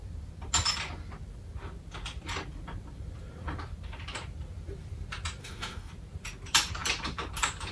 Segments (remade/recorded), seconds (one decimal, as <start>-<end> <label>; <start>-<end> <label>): 0.0-5.4 recorded; 5.4-5.9 remade; 5.9-7.7 recorded